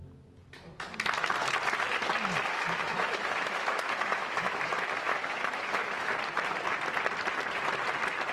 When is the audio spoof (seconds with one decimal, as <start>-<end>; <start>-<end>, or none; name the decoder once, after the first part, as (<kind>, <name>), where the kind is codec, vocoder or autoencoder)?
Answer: 2.4-6.1 (autoencoder, DAC-VAE)

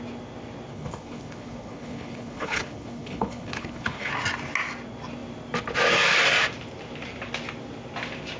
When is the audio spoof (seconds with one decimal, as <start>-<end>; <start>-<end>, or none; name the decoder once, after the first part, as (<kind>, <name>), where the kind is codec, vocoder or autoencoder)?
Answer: 0.7-4.1 (codec, HILCodec)

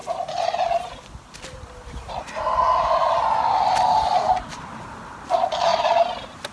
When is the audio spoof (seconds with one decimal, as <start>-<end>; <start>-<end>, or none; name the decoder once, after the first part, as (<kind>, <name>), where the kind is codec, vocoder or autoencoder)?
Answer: none

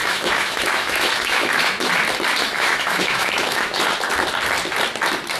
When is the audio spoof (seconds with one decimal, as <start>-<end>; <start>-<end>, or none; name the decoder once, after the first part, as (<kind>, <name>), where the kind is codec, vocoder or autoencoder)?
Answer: 0.0-1.9 (autoencoder, DAC-VAE); 2.4-3.8

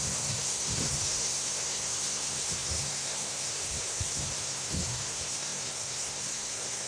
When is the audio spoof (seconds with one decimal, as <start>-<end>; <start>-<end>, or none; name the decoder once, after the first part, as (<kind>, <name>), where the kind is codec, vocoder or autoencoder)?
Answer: 0.0-6.9 (codec, SNAC)